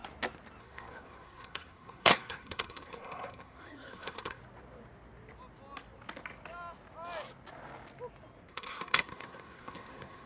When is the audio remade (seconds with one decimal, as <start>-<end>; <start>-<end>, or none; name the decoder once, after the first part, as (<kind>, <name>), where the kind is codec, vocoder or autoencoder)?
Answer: 0.6-4.4 (codec, SNAC); 8.5-10.3